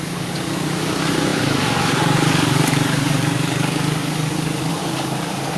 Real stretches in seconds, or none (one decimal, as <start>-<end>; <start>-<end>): none